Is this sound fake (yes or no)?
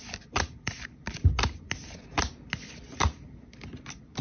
no